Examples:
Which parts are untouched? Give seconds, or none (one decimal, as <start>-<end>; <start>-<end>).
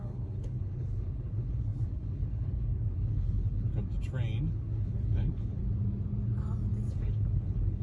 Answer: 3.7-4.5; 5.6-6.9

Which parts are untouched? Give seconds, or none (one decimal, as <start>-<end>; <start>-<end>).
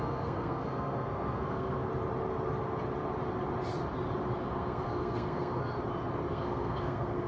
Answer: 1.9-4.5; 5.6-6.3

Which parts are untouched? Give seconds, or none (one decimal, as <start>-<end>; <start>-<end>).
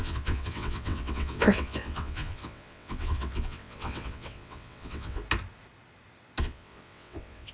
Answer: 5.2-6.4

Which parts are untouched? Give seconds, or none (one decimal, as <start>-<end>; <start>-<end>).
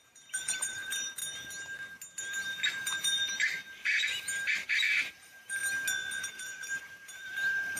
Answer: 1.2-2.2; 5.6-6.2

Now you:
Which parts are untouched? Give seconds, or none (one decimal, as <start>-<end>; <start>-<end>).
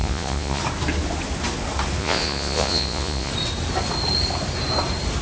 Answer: 0.6-2.0; 3.3-5.2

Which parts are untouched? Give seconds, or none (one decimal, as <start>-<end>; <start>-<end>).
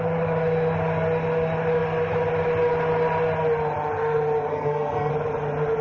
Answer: 0.0-4.5; 5.1-5.8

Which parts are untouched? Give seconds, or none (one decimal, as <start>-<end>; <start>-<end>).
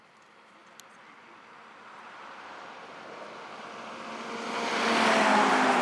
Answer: 0.0-5.8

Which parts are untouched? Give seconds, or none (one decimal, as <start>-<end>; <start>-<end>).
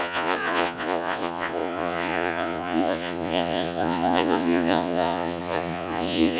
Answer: none